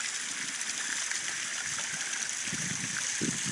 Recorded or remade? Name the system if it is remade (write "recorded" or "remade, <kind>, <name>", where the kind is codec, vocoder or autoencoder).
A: recorded